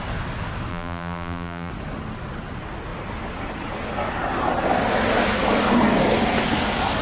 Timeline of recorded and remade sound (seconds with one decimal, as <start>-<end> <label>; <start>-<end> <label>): 0.0-0.7 recorded; 0.7-1.7 remade; 1.7-7.0 recorded